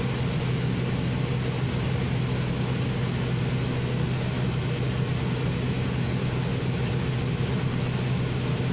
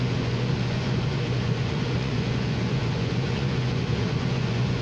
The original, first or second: first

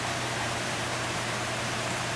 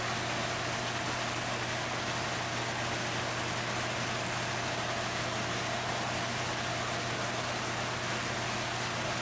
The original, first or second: second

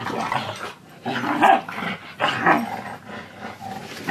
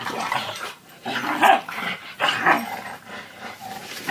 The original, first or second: first